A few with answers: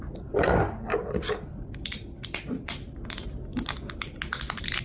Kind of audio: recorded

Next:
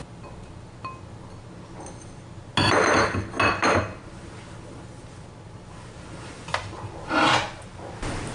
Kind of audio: recorded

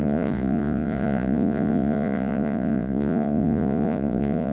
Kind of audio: remade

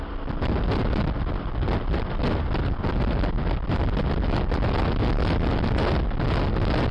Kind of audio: recorded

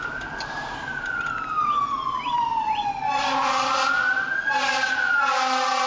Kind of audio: recorded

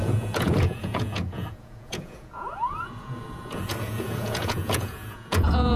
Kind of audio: remade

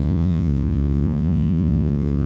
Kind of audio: remade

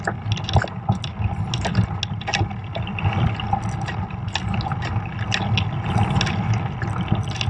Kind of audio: recorded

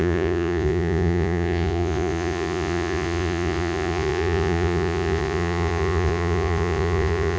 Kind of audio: remade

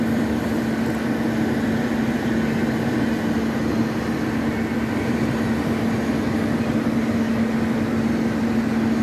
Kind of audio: recorded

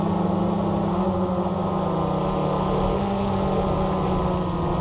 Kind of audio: recorded